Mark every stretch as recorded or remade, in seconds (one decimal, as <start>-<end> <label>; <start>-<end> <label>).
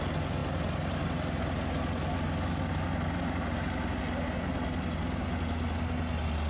0.0-6.5 recorded